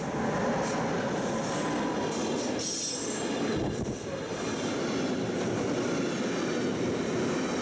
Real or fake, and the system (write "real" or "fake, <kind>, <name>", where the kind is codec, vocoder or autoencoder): real